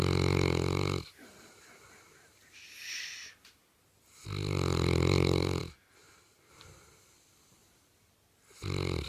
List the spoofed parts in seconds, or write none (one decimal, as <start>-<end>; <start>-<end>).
none